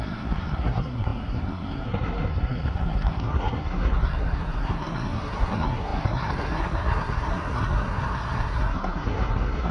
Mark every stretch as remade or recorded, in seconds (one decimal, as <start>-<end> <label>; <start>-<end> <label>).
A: 0.0-9.7 remade